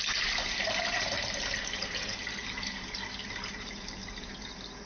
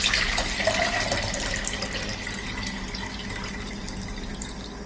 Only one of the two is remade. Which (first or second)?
first